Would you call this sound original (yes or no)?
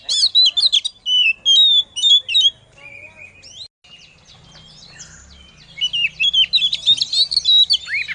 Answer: yes